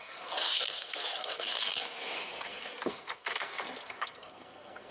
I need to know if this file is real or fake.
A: fake